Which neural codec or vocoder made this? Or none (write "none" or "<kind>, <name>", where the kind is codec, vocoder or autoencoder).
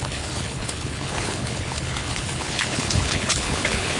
codec, HILCodec